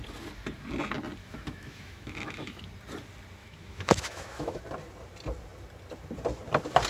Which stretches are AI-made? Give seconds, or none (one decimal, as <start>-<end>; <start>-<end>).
1.2-2.6; 3.4-4.6